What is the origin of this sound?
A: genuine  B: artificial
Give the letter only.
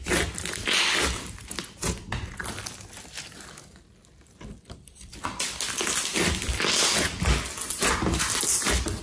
A